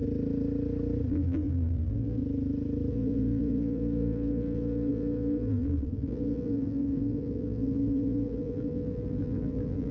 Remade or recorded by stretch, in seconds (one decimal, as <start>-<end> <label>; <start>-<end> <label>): 0.0-1.1 recorded; 1.1-2.2 remade; 2.2-2.9 recorded; 2.9-9.9 remade